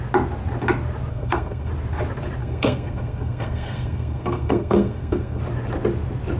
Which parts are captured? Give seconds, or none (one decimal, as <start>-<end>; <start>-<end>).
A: 0.0-1.1; 1.7-2.4; 5.4-6.4